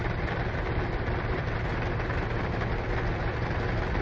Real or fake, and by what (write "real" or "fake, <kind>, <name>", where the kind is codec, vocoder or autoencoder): real